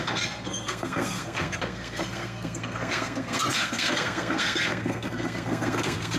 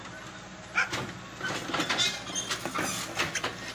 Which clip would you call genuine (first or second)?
second